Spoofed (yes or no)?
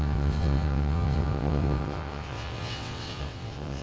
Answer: yes